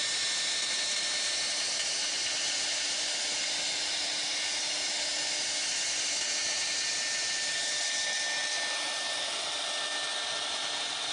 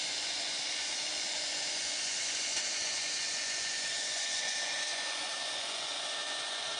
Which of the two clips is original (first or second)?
first